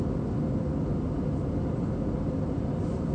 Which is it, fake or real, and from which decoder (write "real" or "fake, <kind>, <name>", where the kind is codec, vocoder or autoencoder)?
real